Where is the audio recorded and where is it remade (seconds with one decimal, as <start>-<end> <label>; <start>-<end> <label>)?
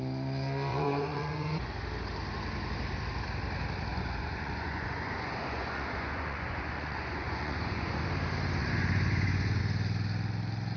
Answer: 0.0-0.7 recorded; 0.7-1.7 remade; 1.7-3.9 recorded; 3.9-8.0 remade; 8.0-8.6 recorded; 8.6-9.6 remade; 9.6-10.8 recorded